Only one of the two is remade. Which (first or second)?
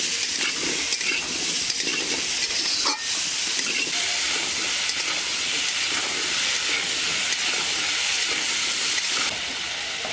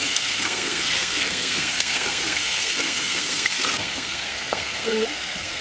second